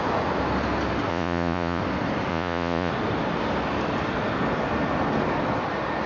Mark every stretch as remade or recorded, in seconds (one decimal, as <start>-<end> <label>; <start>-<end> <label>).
0.0-1.1 recorded; 1.1-1.8 remade; 1.8-2.3 recorded; 2.3-2.9 remade; 2.9-6.1 recorded